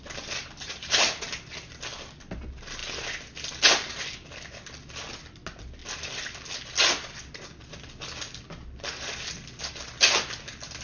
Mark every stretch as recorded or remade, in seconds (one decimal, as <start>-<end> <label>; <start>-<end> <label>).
0.0-0.4 recorded; 0.4-1.7 remade; 1.7-5.8 recorded; 5.8-6.5 remade; 6.5-10.8 recorded